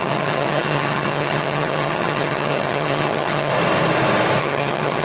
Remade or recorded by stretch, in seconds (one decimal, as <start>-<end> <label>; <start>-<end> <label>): 0.0-3.5 remade; 3.5-4.4 recorded; 4.4-5.0 remade